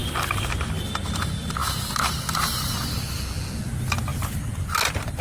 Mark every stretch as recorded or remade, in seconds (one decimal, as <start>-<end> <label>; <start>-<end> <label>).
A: 0.0-5.2 recorded